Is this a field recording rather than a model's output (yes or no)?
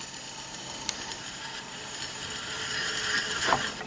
yes